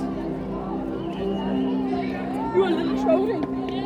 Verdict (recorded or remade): recorded